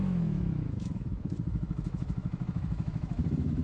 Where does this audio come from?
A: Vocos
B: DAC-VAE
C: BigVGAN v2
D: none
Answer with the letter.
B